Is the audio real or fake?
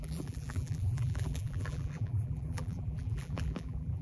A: fake